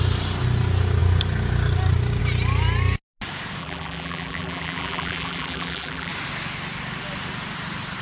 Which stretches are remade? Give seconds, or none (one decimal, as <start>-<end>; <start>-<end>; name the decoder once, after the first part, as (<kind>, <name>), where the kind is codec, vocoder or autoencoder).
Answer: 3.6-6.1 (vocoder, BigVGAN v2)